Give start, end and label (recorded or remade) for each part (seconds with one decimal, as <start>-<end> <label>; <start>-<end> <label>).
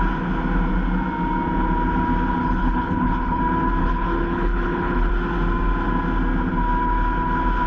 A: 0.0-2.4 recorded; 2.4-3.4 remade; 3.4-3.8 recorded; 3.8-5.1 remade; 5.1-7.7 recorded